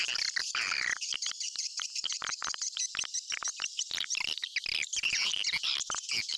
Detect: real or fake fake